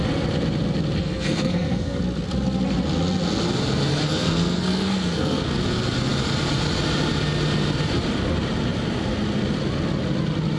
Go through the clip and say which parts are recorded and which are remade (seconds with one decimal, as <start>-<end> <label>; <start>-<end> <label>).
0.0-1.0 recorded; 1.0-2.0 remade; 2.0-3.9 recorded; 3.9-5.6 remade; 5.6-10.6 recorded